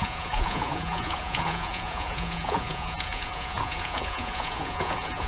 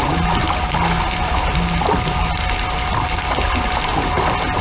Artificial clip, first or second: first